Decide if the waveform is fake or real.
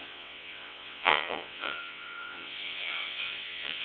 fake